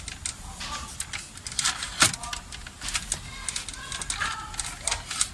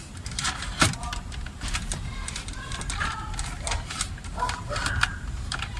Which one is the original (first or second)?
first